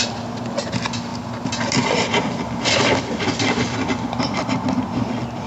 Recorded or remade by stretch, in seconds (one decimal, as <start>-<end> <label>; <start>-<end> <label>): 0.0-5.5 recorded